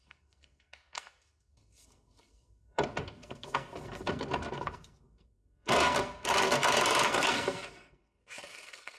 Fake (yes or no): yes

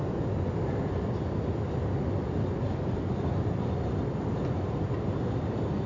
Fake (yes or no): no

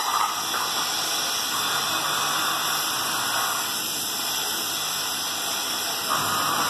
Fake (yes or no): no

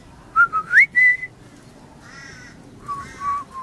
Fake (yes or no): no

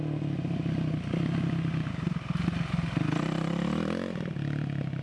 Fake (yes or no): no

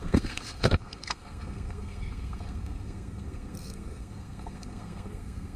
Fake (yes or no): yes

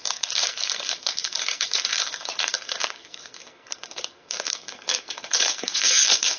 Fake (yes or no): yes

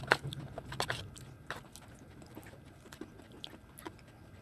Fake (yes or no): no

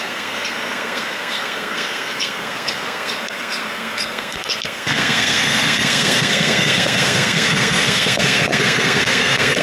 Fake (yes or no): yes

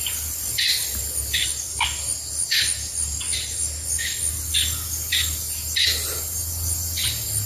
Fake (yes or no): no